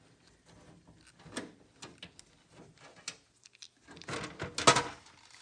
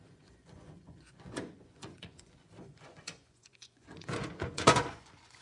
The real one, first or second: first